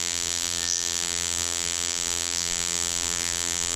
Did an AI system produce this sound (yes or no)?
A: yes